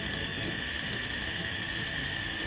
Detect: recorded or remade remade